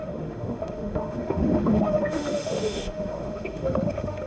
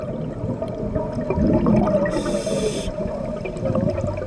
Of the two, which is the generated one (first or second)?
first